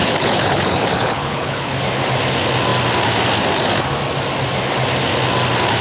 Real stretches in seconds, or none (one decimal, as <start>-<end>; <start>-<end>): 1.8-5.8